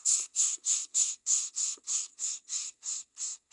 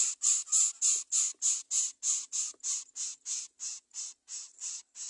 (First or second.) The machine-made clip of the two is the first